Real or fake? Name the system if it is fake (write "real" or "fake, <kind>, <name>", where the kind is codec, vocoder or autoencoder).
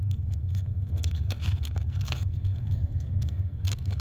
fake, codec, SNAC